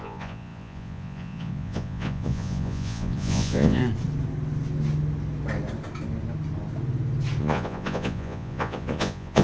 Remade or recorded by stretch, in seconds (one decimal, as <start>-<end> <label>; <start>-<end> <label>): 0.0-3.8 remade; 3.8-7.4 recorded; 7.4-9.4 remade